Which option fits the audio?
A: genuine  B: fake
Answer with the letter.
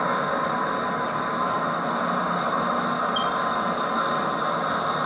A